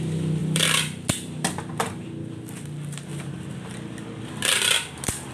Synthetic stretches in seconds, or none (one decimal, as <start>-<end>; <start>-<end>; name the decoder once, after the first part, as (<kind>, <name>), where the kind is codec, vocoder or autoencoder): 0.4-1.7 (vocoder, BigVGAN v2); 3.1-5.3